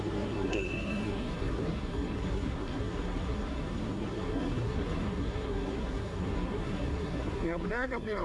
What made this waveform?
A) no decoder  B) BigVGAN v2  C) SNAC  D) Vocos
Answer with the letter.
C